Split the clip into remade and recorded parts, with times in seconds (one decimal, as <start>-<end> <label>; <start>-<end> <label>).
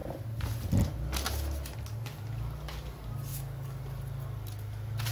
0.0-3.3 recorded; 3.3-3.8 remade; 3.8-5.1 recorded